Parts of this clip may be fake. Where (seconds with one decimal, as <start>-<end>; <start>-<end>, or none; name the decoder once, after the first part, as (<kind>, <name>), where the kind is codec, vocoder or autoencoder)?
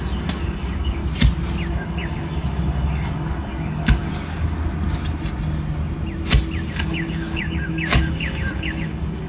0.0-1.0 (codec, DAC); 1.7-4.1; 6.7-9.3